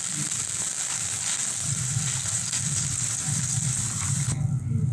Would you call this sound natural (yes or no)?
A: yes